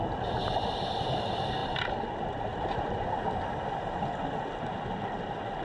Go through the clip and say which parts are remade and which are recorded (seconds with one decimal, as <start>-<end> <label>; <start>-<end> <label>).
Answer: 0.0-2.5 recorded; 2.5-3.2 remade; 3.2-5.6 recorded